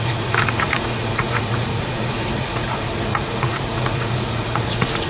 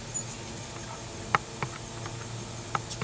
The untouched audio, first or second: second